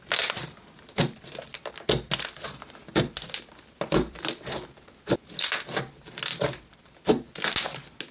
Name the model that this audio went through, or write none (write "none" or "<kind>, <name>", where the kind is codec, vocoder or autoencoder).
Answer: none